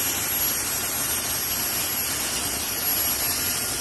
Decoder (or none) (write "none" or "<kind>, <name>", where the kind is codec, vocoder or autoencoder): none